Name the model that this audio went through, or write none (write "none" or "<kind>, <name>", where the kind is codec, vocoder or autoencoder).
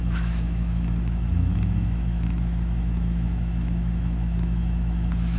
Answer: autoencoder, DAC-VAE